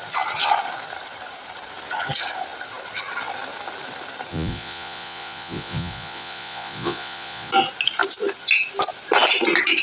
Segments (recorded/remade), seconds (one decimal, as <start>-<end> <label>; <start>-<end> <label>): 0.0-4.3 recorded; 4.3-7.5 remade; 7.5-9.8 recorded